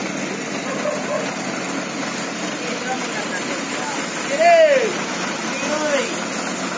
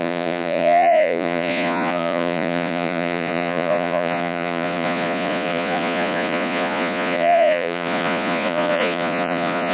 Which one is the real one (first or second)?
first